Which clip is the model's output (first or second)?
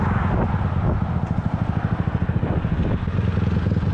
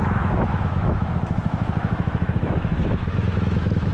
second